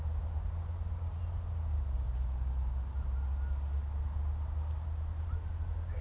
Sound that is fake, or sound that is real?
real